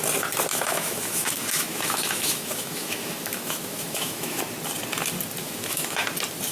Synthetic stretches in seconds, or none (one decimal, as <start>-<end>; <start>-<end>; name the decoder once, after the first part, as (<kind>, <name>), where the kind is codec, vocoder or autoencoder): 0.5-4.4 (autoencoder, DAC-VAE); 5.4-6.0